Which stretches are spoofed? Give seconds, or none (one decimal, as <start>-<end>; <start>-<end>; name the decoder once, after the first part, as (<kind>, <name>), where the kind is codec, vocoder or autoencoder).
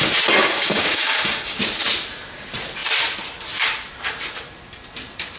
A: 0.4-1.6 (codec, DAC)